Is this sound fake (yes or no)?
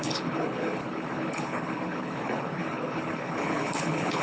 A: yes